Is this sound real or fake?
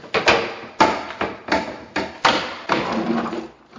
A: real